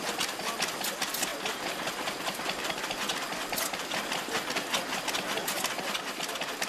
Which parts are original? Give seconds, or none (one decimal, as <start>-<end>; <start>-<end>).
0.0-6.7